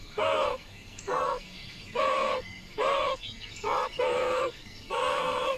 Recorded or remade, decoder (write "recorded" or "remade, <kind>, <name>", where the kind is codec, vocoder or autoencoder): remade, codec, SNAC